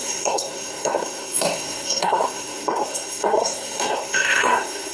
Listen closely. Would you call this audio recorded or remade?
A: remade